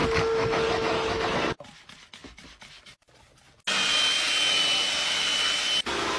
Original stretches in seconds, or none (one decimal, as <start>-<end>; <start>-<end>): 0.0-6.2